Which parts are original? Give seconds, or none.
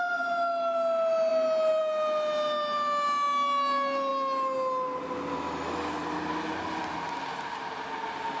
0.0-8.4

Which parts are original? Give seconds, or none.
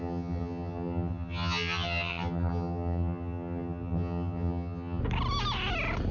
5.0-6.1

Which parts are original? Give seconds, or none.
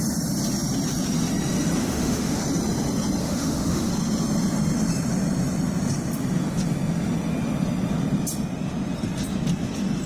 0.0-1.8; 2.4-3.2; 3.9-10.1